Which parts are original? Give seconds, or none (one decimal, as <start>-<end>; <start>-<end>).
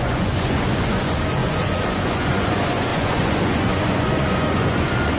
none